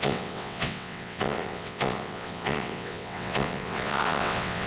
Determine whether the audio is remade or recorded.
remade